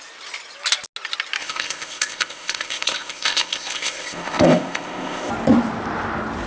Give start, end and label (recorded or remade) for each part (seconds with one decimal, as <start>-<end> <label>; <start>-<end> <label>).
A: 0.0-1.4 recorded; 1.4-5.3 remade; 5.3-6.5 recorded